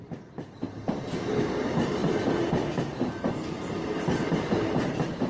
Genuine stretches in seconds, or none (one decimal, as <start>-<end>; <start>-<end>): none